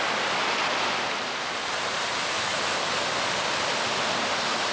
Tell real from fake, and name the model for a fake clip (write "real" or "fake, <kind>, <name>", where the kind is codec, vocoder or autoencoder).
real